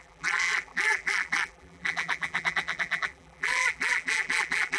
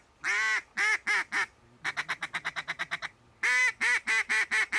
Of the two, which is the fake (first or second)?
first